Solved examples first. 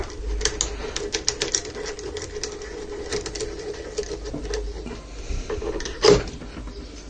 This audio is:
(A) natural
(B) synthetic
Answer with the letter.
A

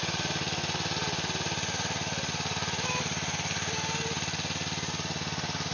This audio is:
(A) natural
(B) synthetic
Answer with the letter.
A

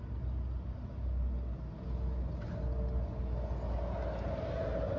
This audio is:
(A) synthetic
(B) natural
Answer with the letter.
B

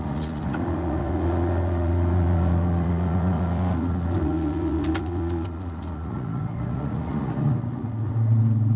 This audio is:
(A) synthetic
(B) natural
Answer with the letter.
A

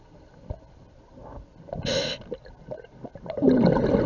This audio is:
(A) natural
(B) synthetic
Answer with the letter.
A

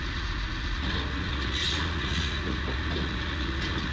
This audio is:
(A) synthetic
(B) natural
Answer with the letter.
A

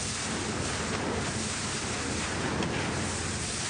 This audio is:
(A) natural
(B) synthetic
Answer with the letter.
A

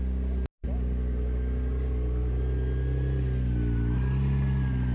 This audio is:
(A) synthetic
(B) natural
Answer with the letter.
B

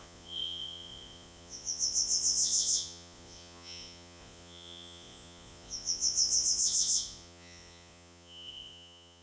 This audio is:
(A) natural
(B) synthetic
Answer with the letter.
B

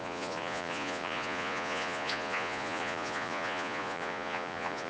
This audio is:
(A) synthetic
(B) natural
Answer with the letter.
A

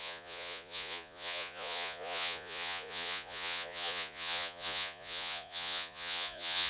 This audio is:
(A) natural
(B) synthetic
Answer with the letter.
B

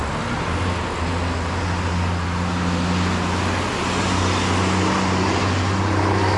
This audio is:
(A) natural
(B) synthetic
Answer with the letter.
A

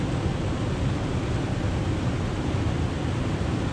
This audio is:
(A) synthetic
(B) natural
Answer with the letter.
B